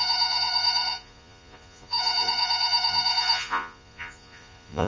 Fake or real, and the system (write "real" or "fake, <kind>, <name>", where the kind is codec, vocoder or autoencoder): fake, vocoder, Vocos